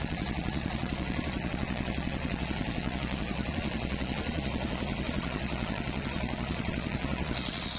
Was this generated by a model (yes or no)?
yes